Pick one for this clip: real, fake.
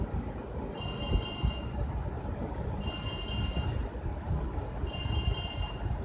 real